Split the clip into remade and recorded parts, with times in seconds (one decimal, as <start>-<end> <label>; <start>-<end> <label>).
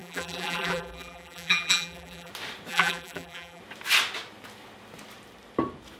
0.0-2.3 remade; 2.3-2.7 recorded; 2.7-3.6 remade; 3.6-6.0 recorded